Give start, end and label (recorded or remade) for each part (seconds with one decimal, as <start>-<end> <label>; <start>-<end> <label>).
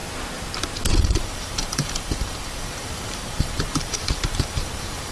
0.0-1.0 recorded; 1.0-5.1 remade